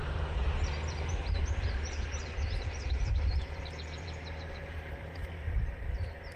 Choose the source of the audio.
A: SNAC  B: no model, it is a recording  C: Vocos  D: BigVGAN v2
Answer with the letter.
D